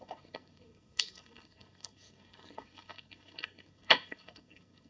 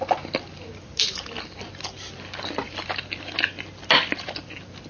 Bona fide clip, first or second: second